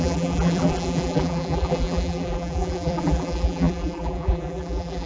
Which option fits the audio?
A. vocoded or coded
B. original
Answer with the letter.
A